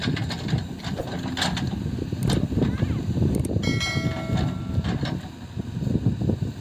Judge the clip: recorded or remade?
recorded